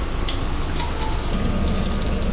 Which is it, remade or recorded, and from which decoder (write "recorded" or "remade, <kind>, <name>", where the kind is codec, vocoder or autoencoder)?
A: recorded